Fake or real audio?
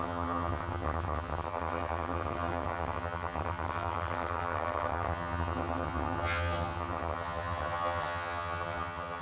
fake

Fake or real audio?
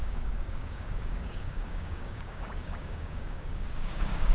fake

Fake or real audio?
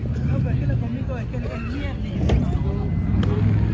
real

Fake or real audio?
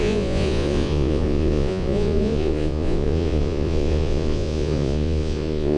fake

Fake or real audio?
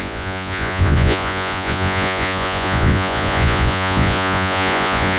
fake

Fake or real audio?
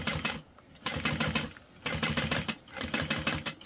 real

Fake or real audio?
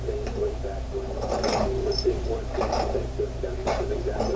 fake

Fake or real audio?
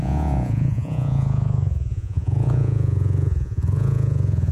fake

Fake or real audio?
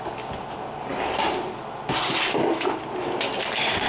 real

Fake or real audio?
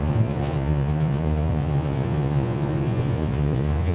fake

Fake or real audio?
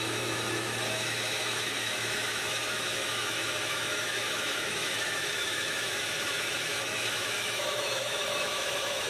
fake